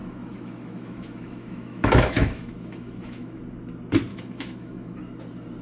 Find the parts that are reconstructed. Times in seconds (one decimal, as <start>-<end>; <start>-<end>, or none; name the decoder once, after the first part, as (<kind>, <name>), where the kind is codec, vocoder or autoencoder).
0.0-3.4 (autoencoder, DAC-VAE); 4.1-5.0